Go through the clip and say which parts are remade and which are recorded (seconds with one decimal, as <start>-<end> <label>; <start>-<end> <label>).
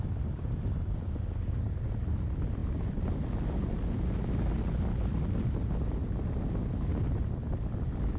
0.0-8.2 recorded